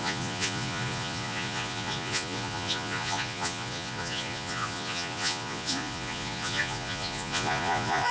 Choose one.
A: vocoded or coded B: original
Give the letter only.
A